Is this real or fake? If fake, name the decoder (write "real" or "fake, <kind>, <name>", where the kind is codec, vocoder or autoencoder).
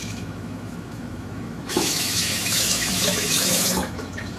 fake, autoencoder, DAC-VAE